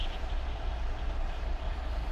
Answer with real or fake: fake